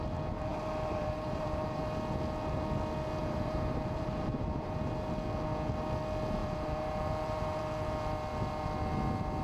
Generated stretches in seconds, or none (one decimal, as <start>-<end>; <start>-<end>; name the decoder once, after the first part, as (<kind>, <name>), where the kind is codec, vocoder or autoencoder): 0.5-2.0 (vocoder, BigVGAN v2); 3.2-4.8; 6.4-7.6